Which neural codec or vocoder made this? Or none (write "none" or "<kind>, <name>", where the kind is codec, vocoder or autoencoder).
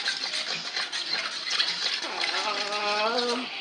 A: none